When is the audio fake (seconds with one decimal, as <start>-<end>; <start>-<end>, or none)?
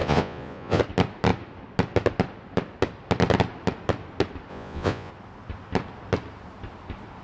0.0-0.8; 4.5-5.1